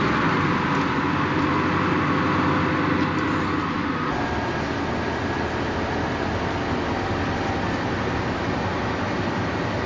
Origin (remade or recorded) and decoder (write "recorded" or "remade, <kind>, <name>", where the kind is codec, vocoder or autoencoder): recorded